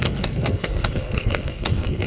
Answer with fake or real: fake